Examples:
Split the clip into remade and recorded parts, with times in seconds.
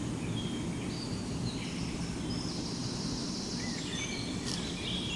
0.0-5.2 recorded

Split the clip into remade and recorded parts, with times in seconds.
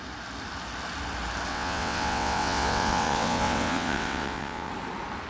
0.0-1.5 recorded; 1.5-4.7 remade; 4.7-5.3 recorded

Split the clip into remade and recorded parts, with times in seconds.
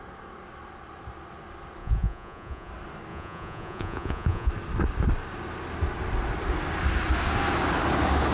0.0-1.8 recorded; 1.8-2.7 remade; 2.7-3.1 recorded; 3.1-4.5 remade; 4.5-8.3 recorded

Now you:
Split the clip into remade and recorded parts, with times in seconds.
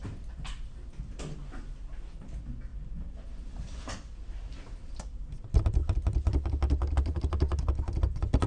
0.0-8.5 recorded